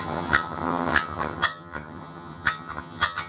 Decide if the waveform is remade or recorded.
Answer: remade